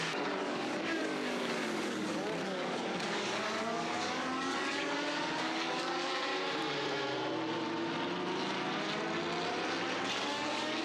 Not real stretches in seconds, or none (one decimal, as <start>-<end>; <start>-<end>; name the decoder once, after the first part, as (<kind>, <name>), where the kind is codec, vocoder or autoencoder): 0.0-6.3 (codec, DAC); 10.1-10.8